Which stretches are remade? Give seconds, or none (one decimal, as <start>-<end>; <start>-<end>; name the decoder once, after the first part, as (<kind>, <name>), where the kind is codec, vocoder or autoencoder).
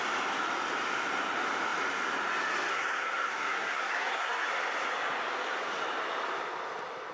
2.7-4.5 (codec, SNAC)